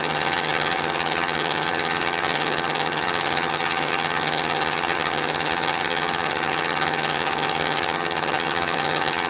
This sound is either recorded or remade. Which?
remade